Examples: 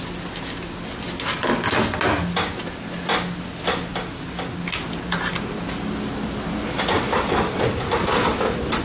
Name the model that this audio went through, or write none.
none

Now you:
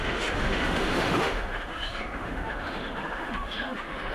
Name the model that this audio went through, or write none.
autoencoder, DAC-VAE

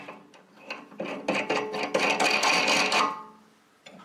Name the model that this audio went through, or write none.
none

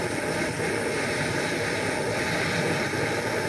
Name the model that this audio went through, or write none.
none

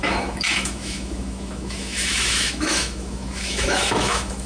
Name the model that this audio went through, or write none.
autoencoder, DAC-VAE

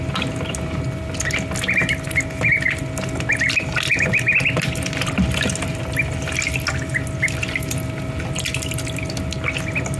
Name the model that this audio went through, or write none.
none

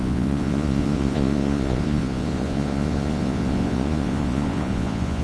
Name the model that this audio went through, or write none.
vocoder, Vocos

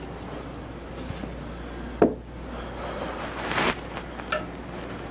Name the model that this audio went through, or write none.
none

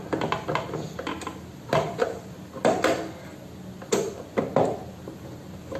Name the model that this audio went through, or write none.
none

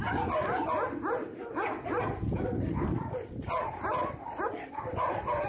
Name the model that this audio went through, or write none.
none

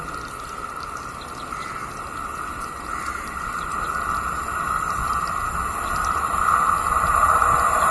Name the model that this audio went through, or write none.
none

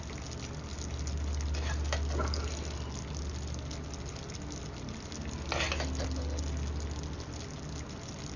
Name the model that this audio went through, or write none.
none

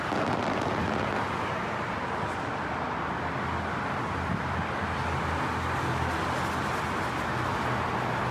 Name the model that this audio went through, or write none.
none